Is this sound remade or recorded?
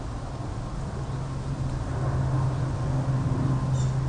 recorded